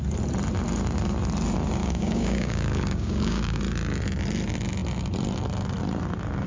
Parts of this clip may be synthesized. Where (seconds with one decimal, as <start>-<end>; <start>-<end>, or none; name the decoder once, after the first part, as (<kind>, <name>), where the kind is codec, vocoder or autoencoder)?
1.8-3.6 (codec, DAC)